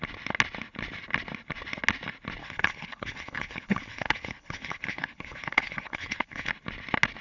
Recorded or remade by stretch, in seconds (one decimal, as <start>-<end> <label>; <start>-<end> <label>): 0.0-2.4 recorded; 2.4-6.5 remade; 6.5-7.2 recorded